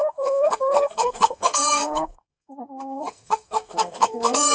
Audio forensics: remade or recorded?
remade